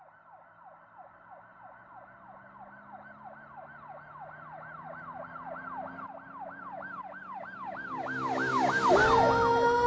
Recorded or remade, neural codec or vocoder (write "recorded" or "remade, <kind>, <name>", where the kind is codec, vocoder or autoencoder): recorded